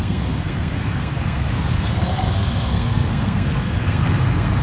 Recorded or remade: remade